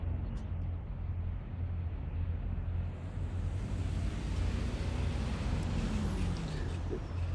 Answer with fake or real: real